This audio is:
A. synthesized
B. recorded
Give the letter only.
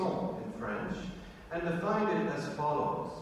B